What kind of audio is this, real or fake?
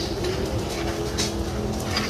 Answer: real